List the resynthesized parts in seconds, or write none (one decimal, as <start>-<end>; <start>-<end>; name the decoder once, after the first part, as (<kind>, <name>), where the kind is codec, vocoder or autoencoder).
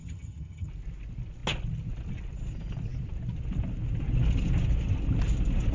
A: 0.0-0.7 (vocoder, HiFi-GAN)